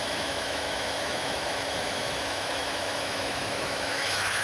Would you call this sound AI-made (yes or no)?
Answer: yes